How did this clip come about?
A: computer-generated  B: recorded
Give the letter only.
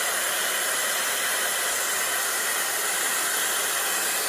A